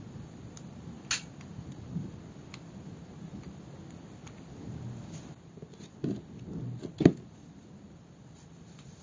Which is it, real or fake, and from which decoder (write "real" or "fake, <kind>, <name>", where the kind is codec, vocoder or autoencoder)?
real